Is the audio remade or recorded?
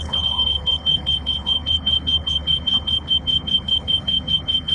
remade